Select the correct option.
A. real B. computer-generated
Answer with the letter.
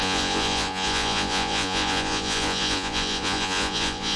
B